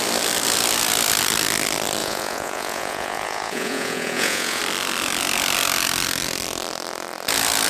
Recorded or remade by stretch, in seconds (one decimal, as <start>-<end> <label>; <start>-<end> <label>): 0.0-2.0 recorded; 2.0-4.6 remade; 4.6-7.7 recorded